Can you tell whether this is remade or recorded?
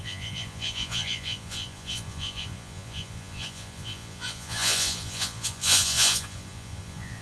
remade